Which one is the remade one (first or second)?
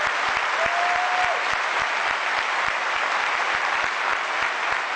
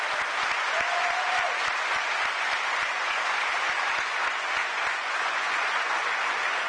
second